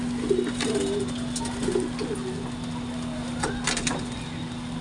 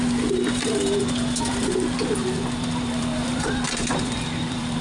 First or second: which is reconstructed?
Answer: second